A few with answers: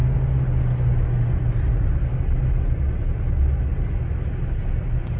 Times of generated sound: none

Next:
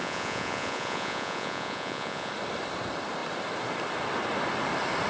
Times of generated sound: 0.0-2.3 (vocoder, Vocos)

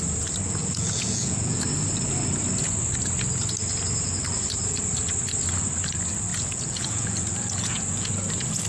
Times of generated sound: 0.6-1.6 (vocoder, Vocos); 6.3-8.1

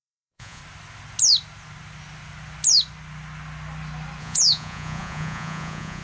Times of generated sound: 0.0-0.6 (vocoder, Vocos); 4.2-6.0

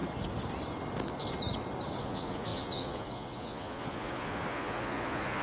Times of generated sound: 2.0-5.4 (vocoder, Vocos)